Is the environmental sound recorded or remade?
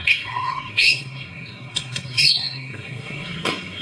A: remade